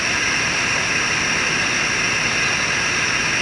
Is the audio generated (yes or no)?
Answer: no